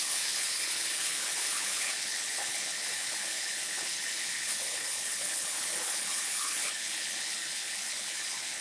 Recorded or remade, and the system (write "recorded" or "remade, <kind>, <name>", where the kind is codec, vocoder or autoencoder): remade, codec, HILCodec